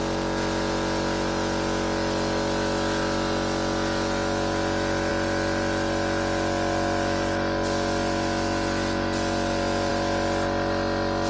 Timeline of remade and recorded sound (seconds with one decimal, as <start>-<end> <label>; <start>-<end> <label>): 0.0-11.3 recorded